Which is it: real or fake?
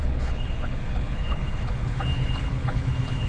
fake